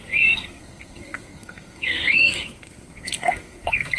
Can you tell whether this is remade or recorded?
remade